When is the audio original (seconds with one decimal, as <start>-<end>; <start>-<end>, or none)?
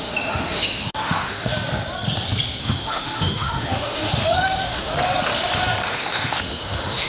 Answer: 1.5-2.6; 4.9-6.0